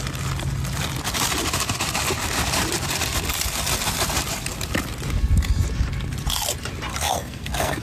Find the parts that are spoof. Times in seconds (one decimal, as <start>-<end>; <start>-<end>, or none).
6.9-7.8